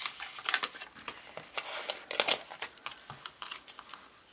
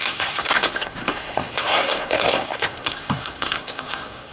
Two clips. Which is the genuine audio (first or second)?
first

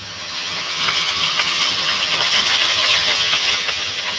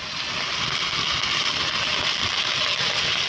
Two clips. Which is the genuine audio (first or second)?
second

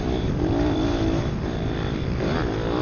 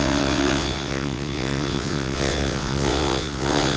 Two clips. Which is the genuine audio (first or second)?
first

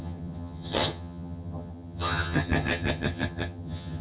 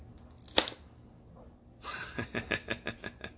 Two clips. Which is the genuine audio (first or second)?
second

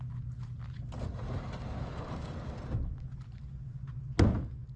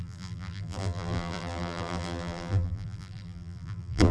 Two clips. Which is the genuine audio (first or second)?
first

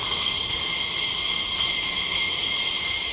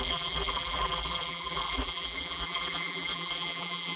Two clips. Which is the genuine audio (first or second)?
first